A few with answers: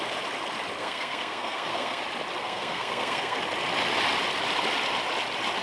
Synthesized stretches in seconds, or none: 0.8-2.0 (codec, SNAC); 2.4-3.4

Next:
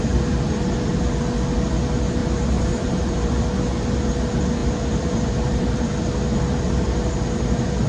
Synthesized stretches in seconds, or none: 2.2-3.4 (vocoder, BigVGAN v2); 4.6-5.8